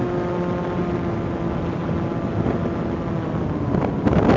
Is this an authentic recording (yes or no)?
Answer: yes